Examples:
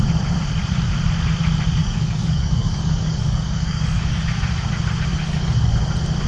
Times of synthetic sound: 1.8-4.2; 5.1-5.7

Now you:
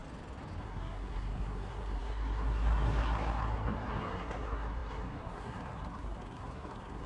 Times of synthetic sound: 0.6-7.1

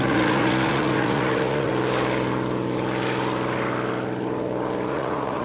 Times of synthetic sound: 0.0-1.7; 4.9-5.4

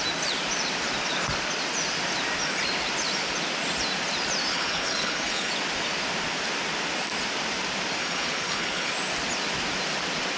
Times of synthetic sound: 4.5-5.5; 8.0-8.9

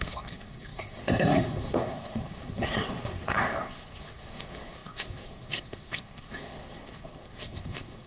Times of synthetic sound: 0.0-8.1

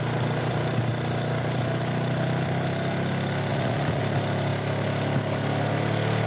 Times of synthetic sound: 3.5-4.0

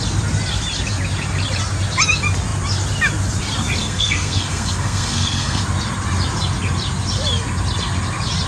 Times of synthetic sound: 3.8-5.6

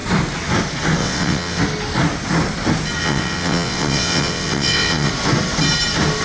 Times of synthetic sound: 1.0-1.6; 3.0-5.1